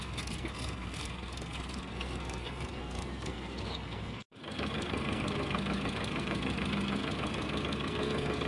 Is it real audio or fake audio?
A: fake